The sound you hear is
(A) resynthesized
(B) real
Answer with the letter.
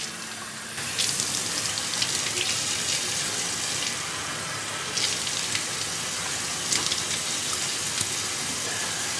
B